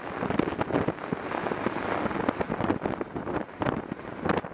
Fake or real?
real